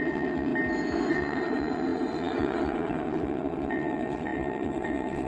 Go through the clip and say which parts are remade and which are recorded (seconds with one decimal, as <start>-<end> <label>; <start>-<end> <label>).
0.0-0.5 remade; 0.5-1.1 recorded; 1.1-5.3 remade